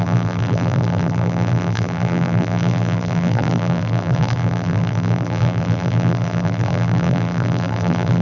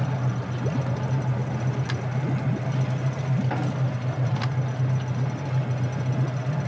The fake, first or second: first